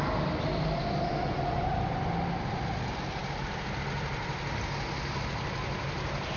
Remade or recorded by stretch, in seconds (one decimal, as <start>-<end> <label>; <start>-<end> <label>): 0.0-1.1 recorded; 1.1-1.7 remade; 1.7-6.4 recorded